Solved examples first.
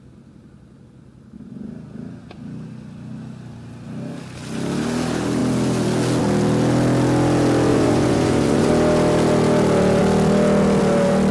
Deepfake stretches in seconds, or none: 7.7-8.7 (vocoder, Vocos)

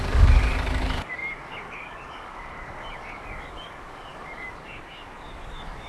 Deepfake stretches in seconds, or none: 0.0-5.9 (codec, DAC)

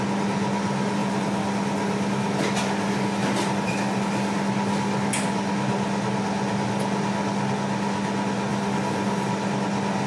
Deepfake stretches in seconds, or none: 1.0-4.5 (vocoder, BigVGAN v2); 8.5-9.3

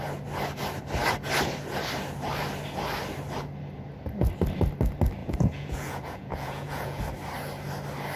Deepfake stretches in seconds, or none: 5.2-7.0 (vocoder, Vocos)